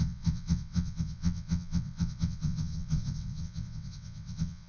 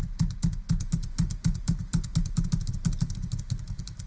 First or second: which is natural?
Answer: second